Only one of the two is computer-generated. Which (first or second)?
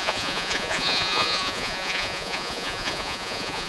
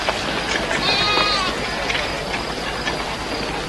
first